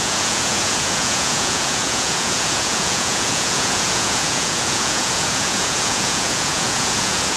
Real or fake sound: fake